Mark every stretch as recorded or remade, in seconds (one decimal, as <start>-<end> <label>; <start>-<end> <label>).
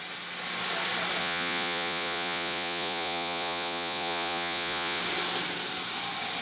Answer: 0.0-1.2 recorded; 1.2-5.0 remade; 5.0-6.4 recorded